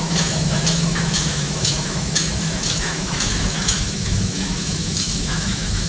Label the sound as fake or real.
fake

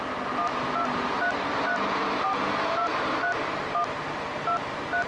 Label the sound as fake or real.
real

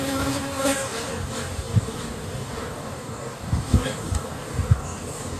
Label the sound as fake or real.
fake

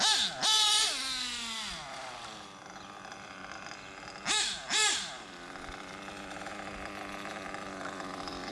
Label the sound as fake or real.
real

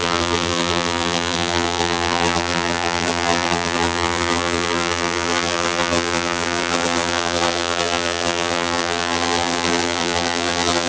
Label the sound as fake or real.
fake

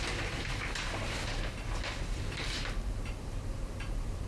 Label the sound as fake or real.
fake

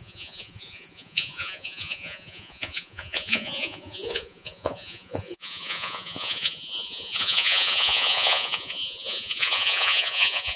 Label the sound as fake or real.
fake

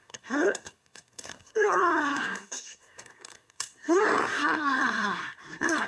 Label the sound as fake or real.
fake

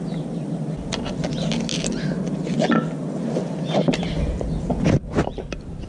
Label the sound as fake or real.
real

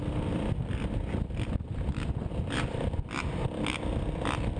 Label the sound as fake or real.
real